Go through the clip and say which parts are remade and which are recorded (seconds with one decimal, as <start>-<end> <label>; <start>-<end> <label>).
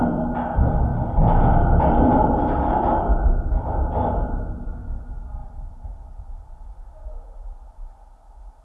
0.0-5.4 recorded; 5.4-6.3 remade; 6.3-8.6 recorded